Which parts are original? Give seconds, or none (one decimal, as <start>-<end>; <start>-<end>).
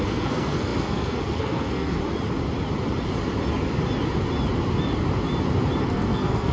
2.0-5.8